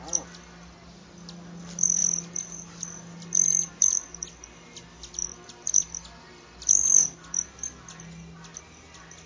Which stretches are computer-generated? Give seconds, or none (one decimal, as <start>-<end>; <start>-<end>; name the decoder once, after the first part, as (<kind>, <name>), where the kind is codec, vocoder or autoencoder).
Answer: none

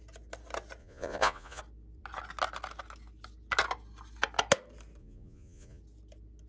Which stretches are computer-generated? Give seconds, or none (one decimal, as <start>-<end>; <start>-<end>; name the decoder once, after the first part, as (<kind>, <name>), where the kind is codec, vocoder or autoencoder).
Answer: 0.8-1.6 (vocoder, Vocos); 5.0-5.8

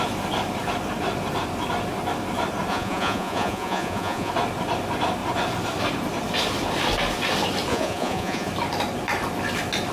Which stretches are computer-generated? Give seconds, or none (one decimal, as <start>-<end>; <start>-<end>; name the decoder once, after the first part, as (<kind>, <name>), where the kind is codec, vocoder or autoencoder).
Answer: 2.7-4.3 (vocoder, Vocos); 7.7-8.5